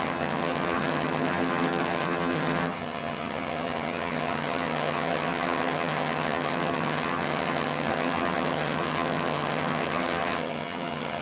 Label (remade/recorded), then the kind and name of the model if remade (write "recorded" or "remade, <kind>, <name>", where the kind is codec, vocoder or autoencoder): remade, vocoder, HiFi-GAN